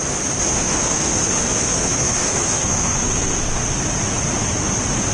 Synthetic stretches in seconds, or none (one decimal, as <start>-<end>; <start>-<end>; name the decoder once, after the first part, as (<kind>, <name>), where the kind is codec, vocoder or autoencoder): 0.5-3.6 (codec, SNAC)